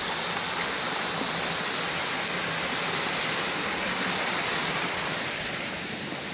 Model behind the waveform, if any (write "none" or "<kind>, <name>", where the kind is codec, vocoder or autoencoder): none